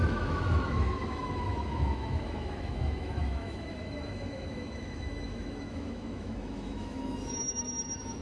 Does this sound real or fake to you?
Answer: fake